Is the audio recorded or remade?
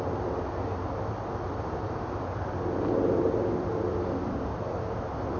recorded